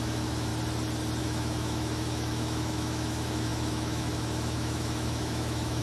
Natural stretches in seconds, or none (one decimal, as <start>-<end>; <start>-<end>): 0.5-1.2